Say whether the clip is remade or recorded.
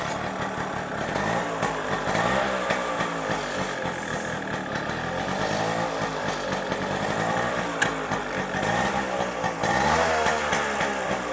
recorded